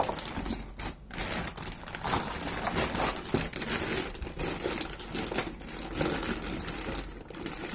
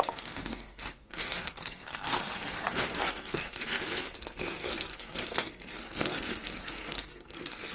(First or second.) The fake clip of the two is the second